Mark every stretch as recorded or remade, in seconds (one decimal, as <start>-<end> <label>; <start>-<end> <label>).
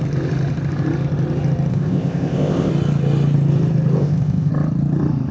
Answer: 0.0-1.7 recorded; 1.7-2.7 remade; 2.7-4.0 recorded; 4.0-4.5 remade; 4.5-5.3 recorded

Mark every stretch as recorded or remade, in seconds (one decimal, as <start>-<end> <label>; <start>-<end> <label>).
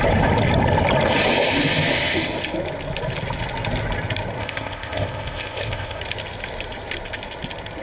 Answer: 0.0-4.4 recorded; 4.4-6.0 remade; 6.0-7.8 recorded